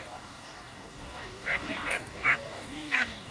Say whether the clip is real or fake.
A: fake